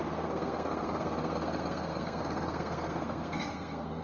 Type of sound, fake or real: fake